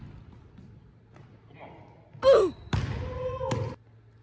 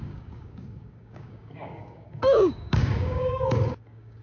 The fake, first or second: second